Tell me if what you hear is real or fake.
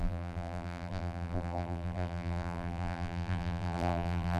fake